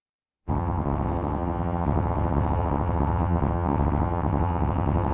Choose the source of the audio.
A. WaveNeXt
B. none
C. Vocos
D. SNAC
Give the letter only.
A